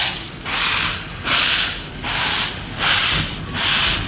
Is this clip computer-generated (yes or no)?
no